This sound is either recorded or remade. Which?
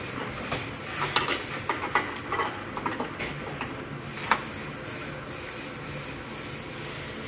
recorded